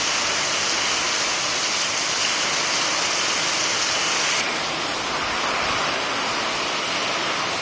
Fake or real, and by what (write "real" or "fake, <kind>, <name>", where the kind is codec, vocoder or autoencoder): real